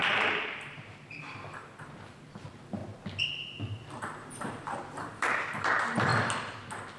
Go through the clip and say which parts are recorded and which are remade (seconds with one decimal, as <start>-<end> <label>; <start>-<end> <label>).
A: 0.0-2.8 remade; 2.8-4.0 recorded; 4.0-6.1 remade; 6.1-7.0 recorded